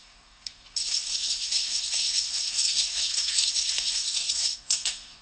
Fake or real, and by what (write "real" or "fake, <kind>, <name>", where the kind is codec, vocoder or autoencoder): fake, codec, SNAC